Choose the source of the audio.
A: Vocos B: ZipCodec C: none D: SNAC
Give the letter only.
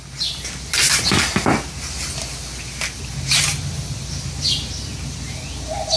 C